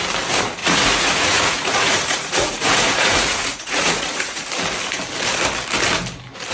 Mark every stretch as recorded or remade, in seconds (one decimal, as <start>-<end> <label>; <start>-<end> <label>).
0.0-0.6 recorded; 0.6-4.5 remade; 4.5-6.5 recorded